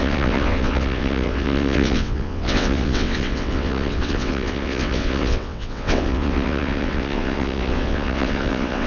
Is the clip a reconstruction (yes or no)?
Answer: yes